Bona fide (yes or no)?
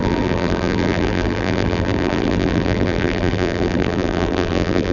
no